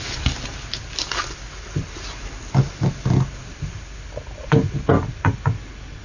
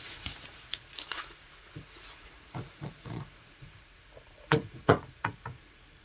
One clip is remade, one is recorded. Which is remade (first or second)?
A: second